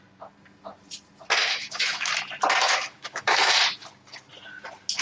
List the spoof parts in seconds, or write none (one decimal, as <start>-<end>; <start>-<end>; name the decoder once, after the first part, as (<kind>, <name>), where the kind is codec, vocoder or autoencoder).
1.4-2.1 (autoencoder, DAC-VAE); 2.6-3.5